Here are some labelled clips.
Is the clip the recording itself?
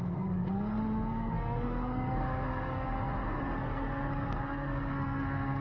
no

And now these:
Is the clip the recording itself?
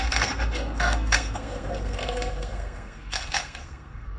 no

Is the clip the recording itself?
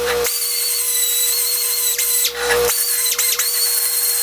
no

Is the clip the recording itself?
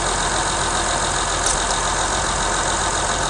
yes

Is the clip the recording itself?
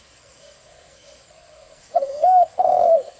no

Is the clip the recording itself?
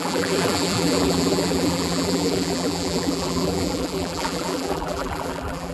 no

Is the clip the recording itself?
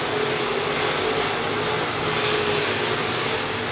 yes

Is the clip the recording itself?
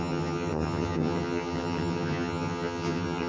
no